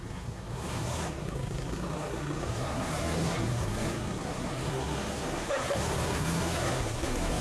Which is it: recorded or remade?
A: remade